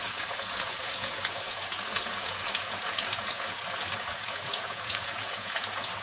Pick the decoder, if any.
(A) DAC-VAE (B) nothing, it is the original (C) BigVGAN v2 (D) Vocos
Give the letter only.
D